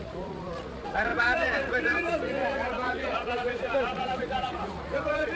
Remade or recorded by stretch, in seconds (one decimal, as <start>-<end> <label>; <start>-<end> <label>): 0.0-5.3 remade